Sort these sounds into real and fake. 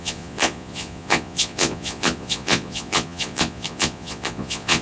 fake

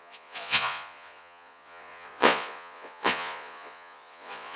fake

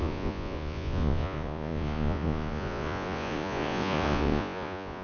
fake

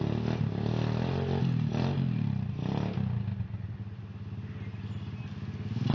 real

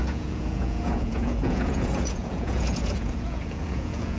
fake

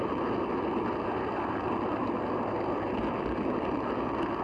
real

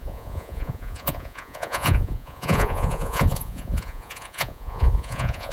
fake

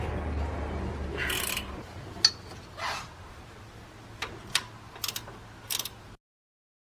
real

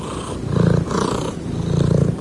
real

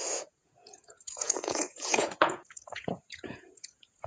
fake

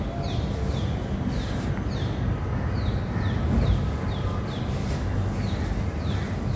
real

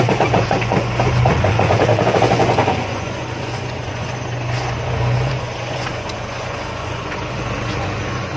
fake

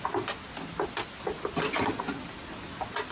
real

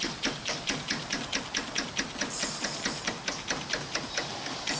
real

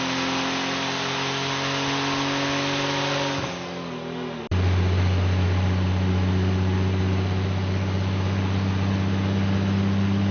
real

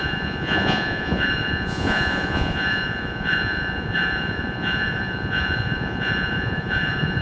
fake